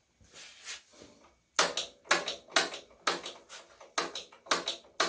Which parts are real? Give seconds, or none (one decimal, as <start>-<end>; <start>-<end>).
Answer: 0.0-5.1